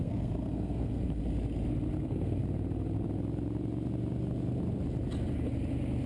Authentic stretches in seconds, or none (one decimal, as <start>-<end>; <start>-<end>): 1.2-2.0; 2.4-6.1